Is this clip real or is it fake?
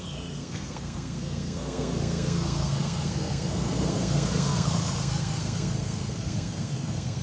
fake